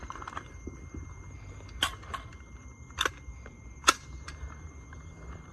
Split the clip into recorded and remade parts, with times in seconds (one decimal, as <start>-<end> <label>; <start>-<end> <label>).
0.0-5.5 recorded

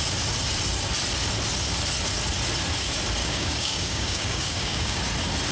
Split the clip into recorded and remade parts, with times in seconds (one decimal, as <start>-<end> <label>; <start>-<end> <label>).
0.0-3.2 recorded; 3.2-5.0 remade; 5.0-5.5 recorded

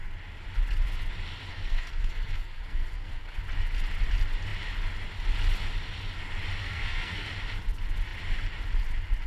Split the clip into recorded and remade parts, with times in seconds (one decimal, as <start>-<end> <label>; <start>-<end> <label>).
0.0-1.5 recorded; 1.5-3.4 remade; 3.4-6.6 recorded; 6.6-7.3 remade; 7.3-9.3 recorded

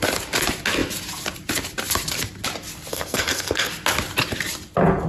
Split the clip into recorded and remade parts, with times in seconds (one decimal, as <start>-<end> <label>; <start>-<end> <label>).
0.0-2.9 recorded; 2.9-3.7 remade; 3.7-5.1 recorded

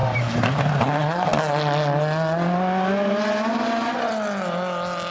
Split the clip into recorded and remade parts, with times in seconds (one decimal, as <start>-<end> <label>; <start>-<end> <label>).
0.0-0.8 remade; 0.8-5.1 recorded

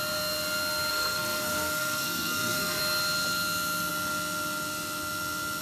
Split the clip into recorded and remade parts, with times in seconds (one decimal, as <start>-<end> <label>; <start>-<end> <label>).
0.0-0.9 recorded; 0.9-2.8 remade; 2.8-5.6 recorded